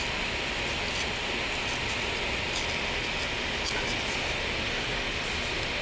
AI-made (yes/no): no